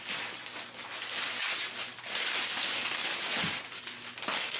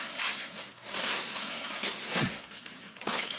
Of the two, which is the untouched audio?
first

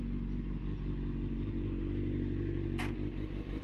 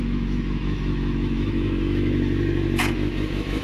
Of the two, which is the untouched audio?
first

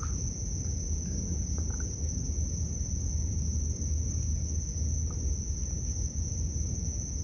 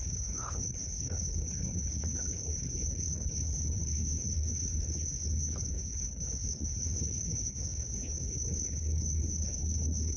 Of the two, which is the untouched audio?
first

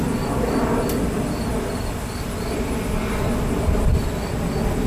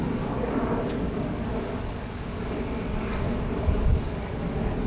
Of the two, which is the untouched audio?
first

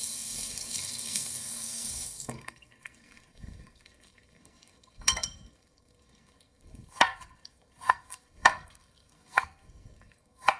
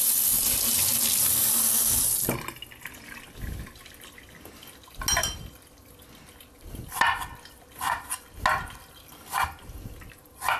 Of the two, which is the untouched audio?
second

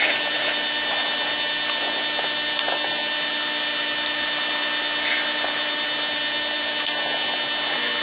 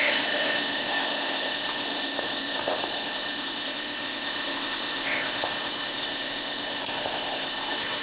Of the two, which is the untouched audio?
first